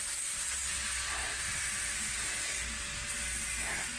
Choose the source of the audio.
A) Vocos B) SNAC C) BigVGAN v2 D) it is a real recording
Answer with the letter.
D